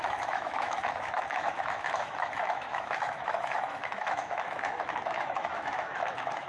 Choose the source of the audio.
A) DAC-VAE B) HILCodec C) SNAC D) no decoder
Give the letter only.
A